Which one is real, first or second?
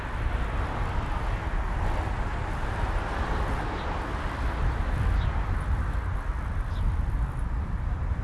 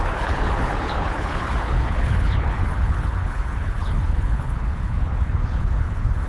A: first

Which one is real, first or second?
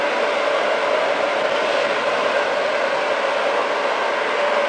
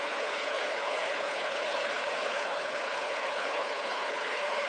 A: first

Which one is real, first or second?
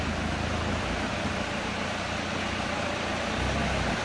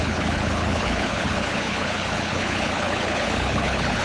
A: first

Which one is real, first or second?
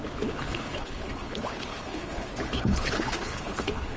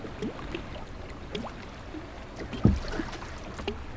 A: second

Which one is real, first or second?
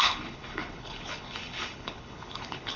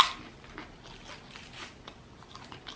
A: second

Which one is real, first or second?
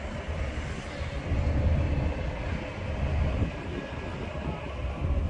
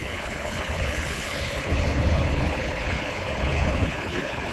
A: first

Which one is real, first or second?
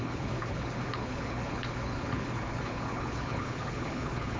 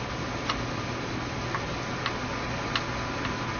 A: second